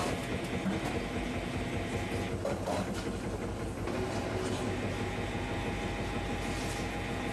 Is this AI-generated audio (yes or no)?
no